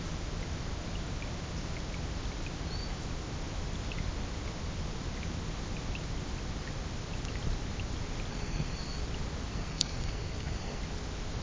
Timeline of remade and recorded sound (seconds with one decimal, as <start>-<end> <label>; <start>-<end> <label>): 0.0-8.3 recorded; 8.3-9.0 remade; 9.0-9.5 recorded; 9.5-10.8 remade; 10.8-11.4 recorded